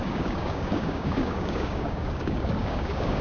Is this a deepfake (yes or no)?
yes